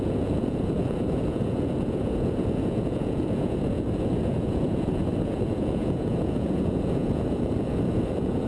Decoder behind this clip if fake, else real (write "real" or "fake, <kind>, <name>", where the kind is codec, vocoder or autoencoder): fake, vocoder, Vocos